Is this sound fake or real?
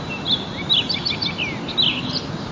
real